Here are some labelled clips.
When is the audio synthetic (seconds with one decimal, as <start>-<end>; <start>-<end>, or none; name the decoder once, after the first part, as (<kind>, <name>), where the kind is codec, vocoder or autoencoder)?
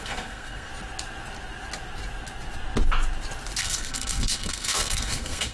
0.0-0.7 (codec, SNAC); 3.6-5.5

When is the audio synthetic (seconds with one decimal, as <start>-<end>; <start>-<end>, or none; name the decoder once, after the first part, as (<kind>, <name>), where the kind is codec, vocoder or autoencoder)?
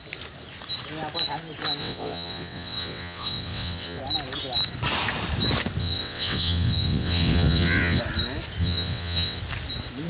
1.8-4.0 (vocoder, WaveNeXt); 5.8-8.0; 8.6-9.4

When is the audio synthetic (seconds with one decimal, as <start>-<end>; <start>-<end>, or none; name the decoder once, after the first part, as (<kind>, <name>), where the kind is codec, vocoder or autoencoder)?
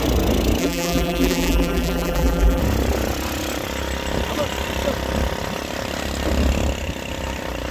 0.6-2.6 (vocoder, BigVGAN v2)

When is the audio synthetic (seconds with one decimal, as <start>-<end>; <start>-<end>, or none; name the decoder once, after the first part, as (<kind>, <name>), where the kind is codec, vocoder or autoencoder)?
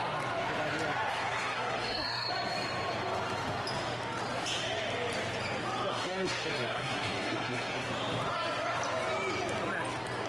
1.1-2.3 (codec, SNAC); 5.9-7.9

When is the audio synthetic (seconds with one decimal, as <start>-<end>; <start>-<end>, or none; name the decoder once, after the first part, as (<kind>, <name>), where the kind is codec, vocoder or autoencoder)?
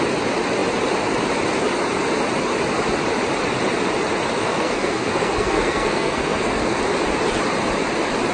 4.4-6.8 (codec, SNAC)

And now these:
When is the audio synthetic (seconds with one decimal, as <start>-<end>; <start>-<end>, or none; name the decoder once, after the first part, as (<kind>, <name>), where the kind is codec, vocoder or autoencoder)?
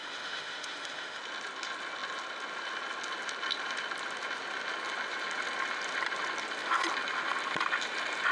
0.0-1.2 (autoencoder, DAC-VAE)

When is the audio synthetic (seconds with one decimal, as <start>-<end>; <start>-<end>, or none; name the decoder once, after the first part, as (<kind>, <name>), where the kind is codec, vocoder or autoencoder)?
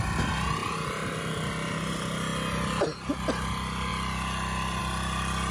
none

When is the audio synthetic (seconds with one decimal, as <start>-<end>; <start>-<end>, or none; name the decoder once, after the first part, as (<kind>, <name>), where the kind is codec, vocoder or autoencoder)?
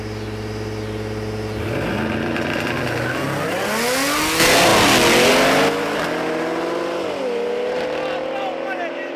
none